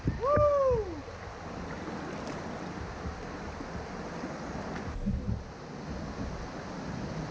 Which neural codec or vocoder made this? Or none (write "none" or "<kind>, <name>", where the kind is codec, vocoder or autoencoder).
none